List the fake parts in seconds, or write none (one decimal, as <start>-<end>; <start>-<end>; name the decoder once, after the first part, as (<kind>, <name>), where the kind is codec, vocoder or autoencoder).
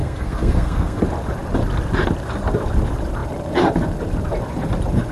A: 0.0-1.0 (codec, SNAC)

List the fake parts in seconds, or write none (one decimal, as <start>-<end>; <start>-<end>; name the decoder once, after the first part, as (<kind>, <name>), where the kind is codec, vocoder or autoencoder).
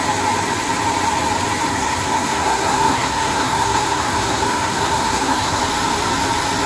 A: 1.7-5.6 (codec, SNAC)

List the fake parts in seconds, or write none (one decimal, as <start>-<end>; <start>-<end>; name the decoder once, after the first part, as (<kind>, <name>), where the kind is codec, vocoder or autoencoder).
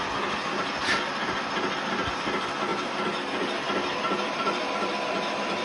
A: none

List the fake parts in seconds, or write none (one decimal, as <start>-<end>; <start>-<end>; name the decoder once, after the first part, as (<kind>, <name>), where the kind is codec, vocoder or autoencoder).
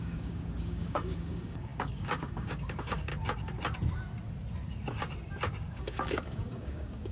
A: 0.0-3.1 (codec, DAC); 5.7-7.1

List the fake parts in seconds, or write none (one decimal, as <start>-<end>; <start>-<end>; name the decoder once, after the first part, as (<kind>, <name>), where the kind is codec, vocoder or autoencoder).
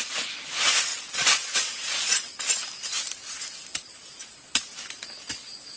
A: 0.9-2.3 (vocoder, Vocos)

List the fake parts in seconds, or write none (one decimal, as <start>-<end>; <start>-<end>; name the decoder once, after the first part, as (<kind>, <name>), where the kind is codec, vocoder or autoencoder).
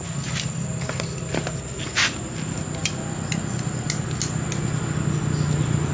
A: none